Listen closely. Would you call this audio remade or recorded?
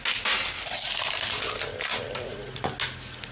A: recorded